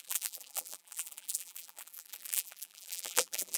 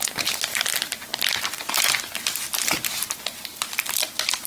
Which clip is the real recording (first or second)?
second